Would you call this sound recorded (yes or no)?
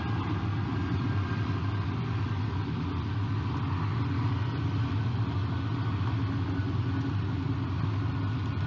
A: yes